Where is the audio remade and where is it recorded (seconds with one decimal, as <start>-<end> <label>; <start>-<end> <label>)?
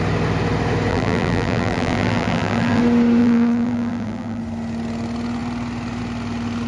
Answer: 0.0-0.9 recorded; 0.9-2.8 remade; 2.8-3.2 recorded; 3.2-4.4 remade; 4.4-6.7 recorded